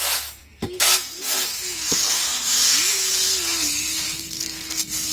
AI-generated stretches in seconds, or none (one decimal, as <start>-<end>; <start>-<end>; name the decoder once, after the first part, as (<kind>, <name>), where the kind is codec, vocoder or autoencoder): 0.0-5.1 (codec, SNAC)